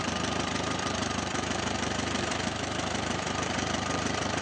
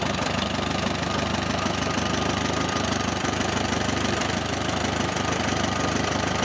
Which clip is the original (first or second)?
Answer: second